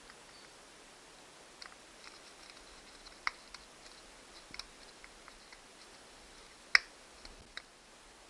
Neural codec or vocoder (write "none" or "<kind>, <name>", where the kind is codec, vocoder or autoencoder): none